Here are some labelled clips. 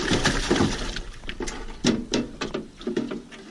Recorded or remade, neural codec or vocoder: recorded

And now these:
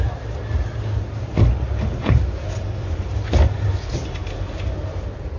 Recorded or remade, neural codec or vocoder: recorded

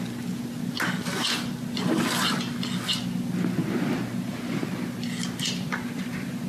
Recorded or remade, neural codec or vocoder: recorded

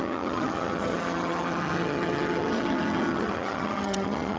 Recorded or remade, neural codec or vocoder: remade, vocoder, HiFi-GAN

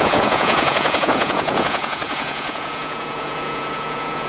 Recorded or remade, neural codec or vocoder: remade, vocoder, Vocos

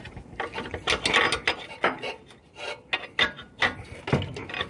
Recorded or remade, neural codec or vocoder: recorded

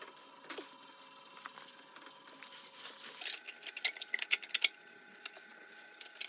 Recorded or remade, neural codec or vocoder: recorded